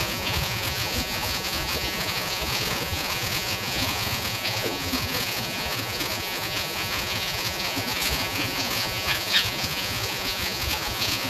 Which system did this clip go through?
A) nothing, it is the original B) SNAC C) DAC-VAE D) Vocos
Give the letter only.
D